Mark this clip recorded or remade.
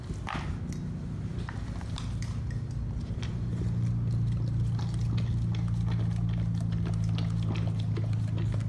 recorded